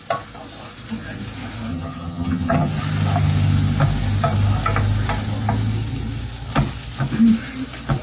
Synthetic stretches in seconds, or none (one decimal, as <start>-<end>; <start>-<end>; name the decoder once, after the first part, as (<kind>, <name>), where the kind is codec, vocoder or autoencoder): 1.7-2.7 (vocoder, HiFi-GAN)